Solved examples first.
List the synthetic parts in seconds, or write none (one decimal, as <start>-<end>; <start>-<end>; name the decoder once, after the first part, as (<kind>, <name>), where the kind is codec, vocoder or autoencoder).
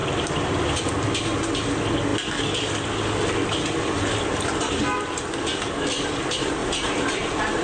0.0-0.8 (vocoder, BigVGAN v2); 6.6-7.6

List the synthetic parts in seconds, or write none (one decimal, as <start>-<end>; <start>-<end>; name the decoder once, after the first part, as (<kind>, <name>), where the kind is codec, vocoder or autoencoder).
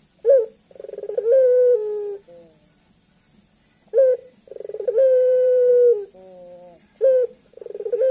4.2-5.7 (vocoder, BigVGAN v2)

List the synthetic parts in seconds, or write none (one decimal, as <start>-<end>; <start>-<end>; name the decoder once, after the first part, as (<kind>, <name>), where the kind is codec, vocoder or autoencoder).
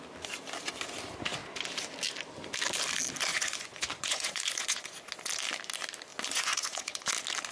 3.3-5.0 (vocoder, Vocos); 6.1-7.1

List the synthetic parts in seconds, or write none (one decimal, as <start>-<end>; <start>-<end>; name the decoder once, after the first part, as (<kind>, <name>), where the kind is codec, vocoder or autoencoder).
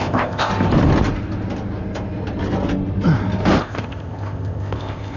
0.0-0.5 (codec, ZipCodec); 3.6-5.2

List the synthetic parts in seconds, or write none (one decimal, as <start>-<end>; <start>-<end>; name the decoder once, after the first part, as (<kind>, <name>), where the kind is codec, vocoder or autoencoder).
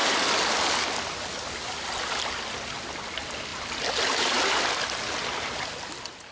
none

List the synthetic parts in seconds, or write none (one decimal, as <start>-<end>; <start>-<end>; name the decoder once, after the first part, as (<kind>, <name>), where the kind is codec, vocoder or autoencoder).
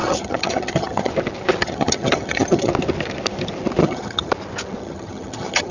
0.0-1.1 (vocoder, HiFi-GAN); 1.6-2.7; 3.8-4.3; 4.8-5.7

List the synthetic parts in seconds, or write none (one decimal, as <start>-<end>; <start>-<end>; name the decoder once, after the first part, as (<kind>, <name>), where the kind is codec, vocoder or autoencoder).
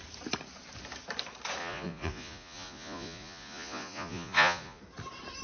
1.6-4.8 (vocoder, Vocos)